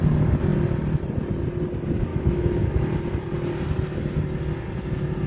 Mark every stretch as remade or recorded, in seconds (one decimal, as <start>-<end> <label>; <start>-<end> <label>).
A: 0.0-2.1 recorded; 2.1-2.7 remade; 2.7-5.3 recorded